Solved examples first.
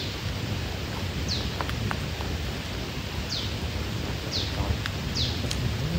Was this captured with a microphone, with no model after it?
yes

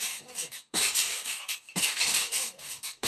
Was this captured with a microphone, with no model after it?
no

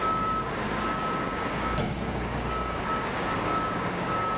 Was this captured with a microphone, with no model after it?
no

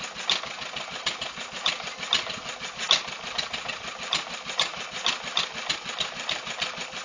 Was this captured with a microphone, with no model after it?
yes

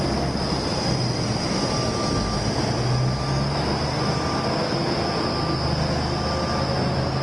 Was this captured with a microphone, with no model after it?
yes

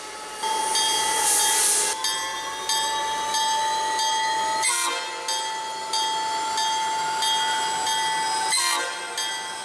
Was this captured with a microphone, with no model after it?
yes